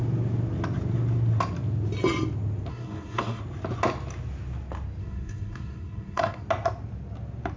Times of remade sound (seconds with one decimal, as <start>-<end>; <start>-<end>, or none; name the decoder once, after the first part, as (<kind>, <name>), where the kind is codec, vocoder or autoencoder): 2.7-3.4 (codec, SNAC); 5.0-6.4